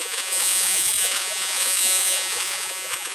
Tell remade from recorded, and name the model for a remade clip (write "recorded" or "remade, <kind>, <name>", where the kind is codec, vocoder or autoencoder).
remade, vocoder, Vocos